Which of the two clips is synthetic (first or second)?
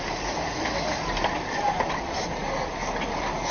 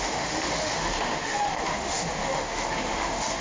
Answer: second